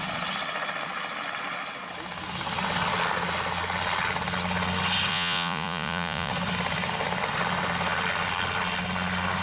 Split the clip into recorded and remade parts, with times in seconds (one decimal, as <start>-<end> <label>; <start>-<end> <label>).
0.0-5.1 recorded; 5.1-6.3 remade; 6.3-9.4 recorded